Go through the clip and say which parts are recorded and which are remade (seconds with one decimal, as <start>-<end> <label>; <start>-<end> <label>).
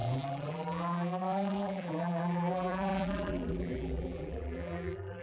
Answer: 0.0-5.2 remade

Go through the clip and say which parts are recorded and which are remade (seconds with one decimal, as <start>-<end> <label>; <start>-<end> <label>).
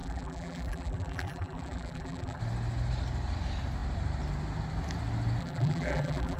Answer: 0.0-2.4 remade; 2.4-5.4 recorded; 5.4-6.4 remade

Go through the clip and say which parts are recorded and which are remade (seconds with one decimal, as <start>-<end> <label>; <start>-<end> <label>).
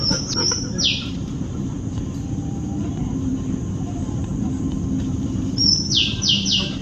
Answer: 0.0-4.3 remade; 4.3-5.0 recorded; 5.0-6.8 remade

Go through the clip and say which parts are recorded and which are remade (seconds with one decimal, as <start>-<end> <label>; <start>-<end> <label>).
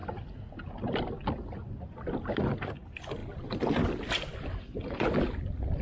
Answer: 0.0-5.8 recorded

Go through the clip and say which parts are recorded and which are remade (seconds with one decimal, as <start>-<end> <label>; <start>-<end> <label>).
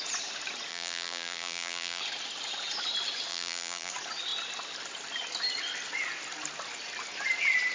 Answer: 0.0-0.7 recorded; 0.7-2.0 remade; 2.0-3.3 recorded; 3.3-3.9 remade; 3.9-7.7 recorded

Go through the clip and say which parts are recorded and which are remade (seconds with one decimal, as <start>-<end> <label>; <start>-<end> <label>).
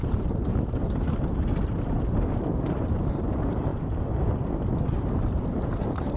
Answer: 0.0-0.5 remade; 0.5-3.1 recorded; 3.1-3.7 remade; 3.7-4.8 recorded; 4.8-6.2 remade